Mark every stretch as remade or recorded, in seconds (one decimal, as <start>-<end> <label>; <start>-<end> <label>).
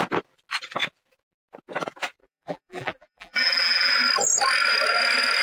0.0-2.2 recorded; 2.2-3.9 remade; 3.9-5.4 recorded